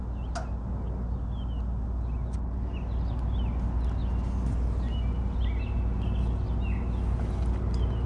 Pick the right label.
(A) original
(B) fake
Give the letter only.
A